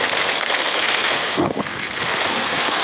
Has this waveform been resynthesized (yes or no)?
yes